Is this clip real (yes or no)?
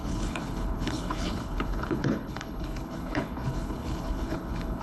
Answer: no